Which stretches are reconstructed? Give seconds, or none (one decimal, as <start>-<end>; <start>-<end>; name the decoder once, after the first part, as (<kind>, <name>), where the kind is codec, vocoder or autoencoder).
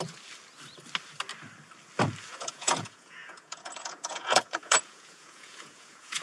2.3-6.2 (vocoder, Vocos)